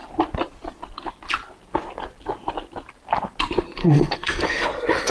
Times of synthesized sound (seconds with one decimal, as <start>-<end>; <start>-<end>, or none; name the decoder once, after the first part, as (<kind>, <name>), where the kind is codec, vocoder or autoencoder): 3.8-4.4 (codec, SNAC)